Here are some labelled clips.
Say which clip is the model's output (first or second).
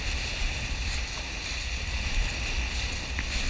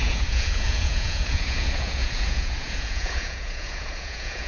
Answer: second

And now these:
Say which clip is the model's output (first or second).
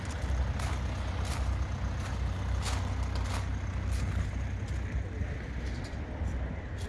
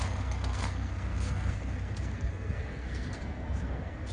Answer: second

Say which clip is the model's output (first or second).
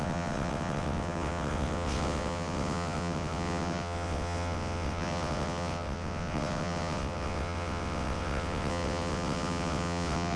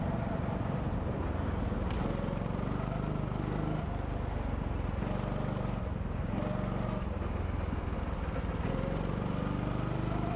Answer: first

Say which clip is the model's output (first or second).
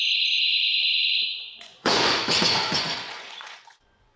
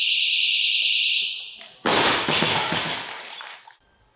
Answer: first